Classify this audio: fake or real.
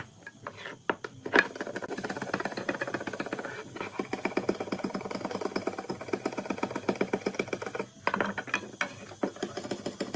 real